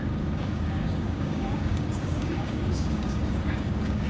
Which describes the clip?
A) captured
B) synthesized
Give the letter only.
B